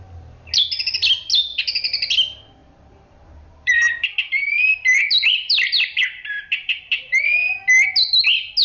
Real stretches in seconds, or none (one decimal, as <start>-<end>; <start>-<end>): 0.0-2.6; 7.2-8.6